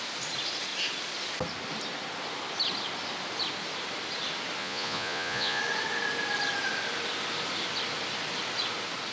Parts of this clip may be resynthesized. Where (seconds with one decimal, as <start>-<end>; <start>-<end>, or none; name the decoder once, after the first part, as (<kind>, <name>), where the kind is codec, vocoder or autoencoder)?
4.6-5.6 (vocoder, Vocos)